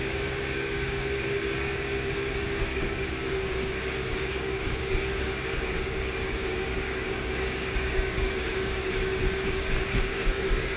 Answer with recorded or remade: remade